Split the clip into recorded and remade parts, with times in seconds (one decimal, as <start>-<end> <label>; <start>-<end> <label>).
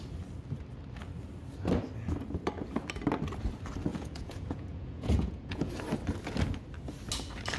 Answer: 0.0-3.9 recorded; 3.9-5.7 remade; 5.7-7.6 recorded